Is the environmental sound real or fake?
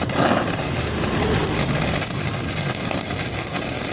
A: fake